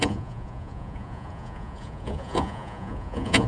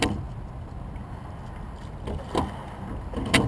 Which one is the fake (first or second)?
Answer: first